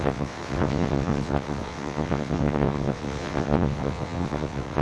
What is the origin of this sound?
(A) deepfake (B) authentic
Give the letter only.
A